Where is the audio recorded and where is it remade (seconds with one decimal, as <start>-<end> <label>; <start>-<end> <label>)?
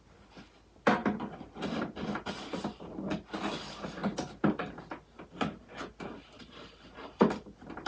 0.0-7.9 recorded